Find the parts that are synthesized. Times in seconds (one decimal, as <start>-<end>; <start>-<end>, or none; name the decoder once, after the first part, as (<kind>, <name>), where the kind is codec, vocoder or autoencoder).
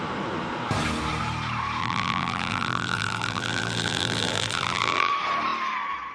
1.8-5.1 (vocoder, BigVGAN v2)